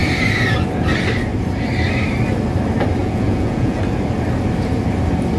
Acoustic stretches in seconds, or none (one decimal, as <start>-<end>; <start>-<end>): 0.0-3.0; 3.8-5.4